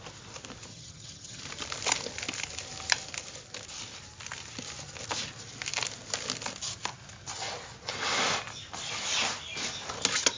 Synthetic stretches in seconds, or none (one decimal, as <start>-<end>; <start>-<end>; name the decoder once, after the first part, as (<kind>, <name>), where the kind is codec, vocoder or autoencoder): 0.7-1.4 (vocoder, HiFi-GAN)